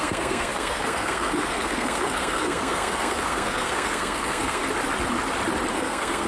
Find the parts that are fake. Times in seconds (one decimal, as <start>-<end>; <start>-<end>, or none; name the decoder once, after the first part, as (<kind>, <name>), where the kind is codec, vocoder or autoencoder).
0.0-4.6 (codec, SNAC); 5.7-6.3